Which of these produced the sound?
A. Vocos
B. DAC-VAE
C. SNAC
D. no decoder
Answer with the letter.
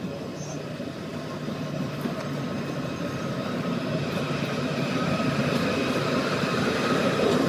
D